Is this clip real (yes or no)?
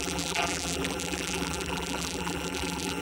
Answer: no